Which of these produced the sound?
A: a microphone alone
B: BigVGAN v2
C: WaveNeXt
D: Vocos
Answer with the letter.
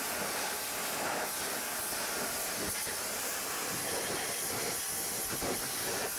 A